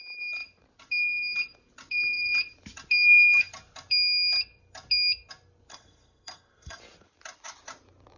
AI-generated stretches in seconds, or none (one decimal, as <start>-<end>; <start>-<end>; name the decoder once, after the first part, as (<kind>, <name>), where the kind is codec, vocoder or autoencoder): 5.7-6.8 (codec, SNAC)